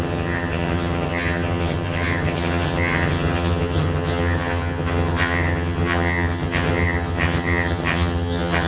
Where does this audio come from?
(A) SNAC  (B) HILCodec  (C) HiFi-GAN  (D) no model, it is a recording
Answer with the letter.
C